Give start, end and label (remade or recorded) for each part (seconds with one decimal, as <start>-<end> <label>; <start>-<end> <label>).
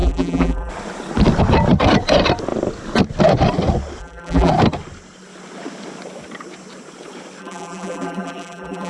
0.0-0.7 remade; 0.7-4.0 recorded; 4.0-4.5 remade; 4.5-7.4 recorded; 7.4-8.9 remade